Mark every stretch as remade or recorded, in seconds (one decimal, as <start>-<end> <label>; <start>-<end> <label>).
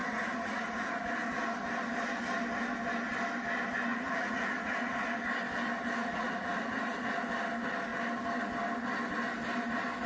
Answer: 0.0-1.1 remade; 1.1-3.9 recorded; 3.9-5.1 remade; 5.1-6.0 recorded; 6.0-7.2 remade; 7.2-10.1 recorded